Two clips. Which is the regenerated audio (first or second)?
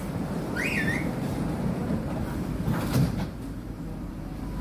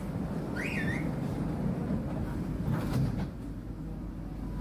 first